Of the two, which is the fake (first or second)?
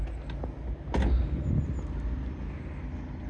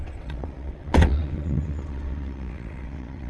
second